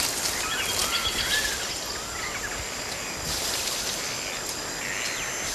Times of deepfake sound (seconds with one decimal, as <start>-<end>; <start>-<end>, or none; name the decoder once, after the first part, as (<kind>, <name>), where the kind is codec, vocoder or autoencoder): none